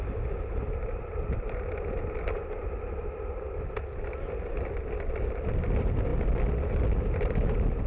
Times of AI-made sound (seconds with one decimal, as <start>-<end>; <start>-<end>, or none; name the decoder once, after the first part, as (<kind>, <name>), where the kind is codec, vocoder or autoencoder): none